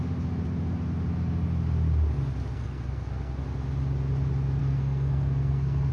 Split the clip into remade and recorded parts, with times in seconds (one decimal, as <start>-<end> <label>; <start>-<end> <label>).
0.0-2.5 recorded; 2.5-3.4 remade; 3.4-4.6 recorded; 4.6-5.9 remade